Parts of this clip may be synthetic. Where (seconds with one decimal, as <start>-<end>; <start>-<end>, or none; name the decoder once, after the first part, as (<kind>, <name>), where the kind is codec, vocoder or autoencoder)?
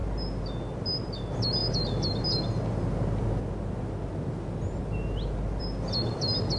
none